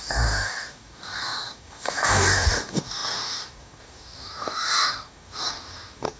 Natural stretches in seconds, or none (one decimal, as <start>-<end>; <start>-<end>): none